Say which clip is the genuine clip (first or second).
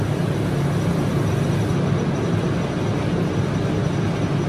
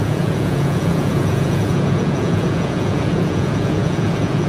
first